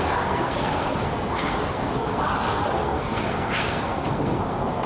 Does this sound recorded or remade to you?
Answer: remade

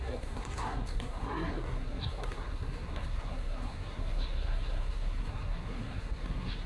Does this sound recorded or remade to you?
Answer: remade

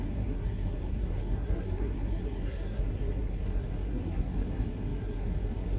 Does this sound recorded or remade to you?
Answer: remade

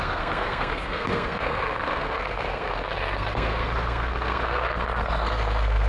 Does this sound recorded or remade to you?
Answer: remade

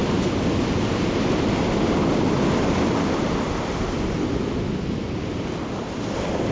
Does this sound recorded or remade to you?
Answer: recorded